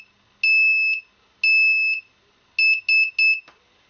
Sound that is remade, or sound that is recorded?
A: recorded